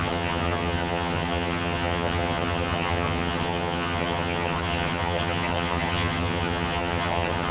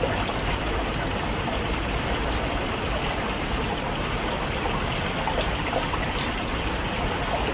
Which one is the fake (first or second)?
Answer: first